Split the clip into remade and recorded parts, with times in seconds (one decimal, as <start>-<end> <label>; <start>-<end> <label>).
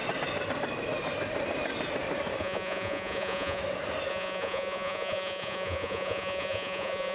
0.0-2.4 recorded; 2.4-3.6 remade; 3.6-4.1 recorded; 4.1-7.1 remade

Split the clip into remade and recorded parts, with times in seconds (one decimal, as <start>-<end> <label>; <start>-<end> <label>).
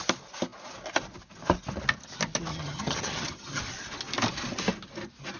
0.0-2.5 recorded; 2.5-3.6 remade; 3.6-5.4 recorded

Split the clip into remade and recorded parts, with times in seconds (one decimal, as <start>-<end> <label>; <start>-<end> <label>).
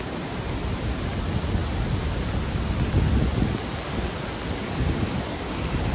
0.0-5.9 recorded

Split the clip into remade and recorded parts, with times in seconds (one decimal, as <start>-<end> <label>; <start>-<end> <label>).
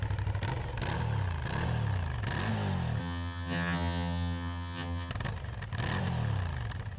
0.0-3.0 recorded; 3.0-5.1 remade; 5.1-7.0 recorded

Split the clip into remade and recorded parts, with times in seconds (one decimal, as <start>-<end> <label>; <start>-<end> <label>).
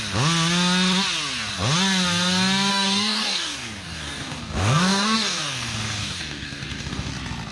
0.0-2.7 recorded; 2.7-7.1 remade; 7.1-7.5 recorded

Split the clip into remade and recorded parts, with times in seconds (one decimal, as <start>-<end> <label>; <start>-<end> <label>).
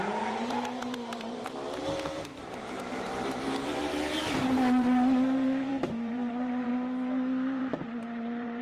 0.0-6.7 remade; 6.7-7.6 recorded; 7.6-8.6 remade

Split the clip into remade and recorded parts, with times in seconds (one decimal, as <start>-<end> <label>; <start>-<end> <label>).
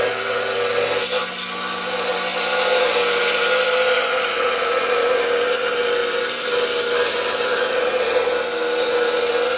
0.0-9.6 recorded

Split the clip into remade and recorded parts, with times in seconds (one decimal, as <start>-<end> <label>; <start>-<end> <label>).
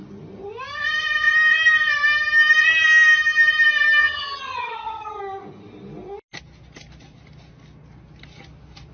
0.0-4.0 recorded; 4.0-5.2 remade; 5.2-8.9 recorded